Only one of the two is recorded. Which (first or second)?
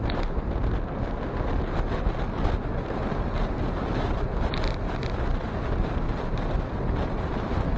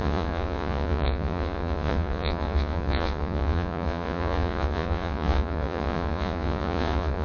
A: first